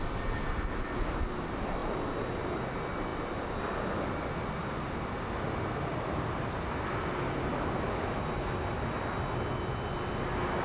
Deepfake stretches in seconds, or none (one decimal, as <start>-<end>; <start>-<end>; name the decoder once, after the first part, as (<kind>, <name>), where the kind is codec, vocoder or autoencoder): none